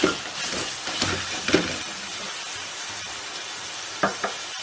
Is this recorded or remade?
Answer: recorded